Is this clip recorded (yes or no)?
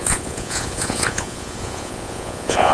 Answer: no